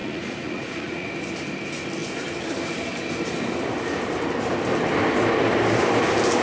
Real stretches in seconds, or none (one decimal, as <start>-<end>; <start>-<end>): 1.1-6.4